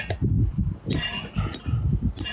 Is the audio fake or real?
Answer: real